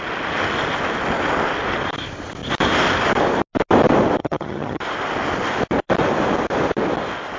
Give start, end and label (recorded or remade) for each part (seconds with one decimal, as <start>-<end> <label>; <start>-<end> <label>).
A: 0.0-4.2 recorded; 4.2-4.8 remade; 4.8-7.4 recorded